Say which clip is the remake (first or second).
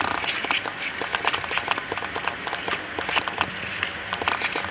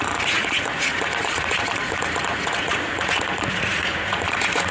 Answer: second